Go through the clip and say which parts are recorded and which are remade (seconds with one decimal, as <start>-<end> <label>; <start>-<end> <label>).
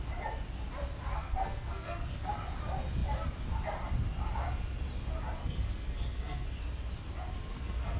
0.0-1.1 recorded; 1.1-2.3 remade; 2.3-5.4 recorded; 5.4-6.6 remade; 6.6-7.5 recorded; 7.5-8.0 remade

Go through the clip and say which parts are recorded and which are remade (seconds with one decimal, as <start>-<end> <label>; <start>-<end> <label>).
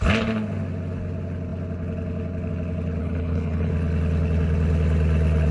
0.0-3.0 recorded; 3.0-3.7 remade; 3.7-5.5 recorded